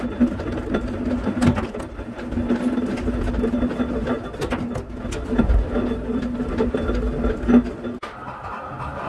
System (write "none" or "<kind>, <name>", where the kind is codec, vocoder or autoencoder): none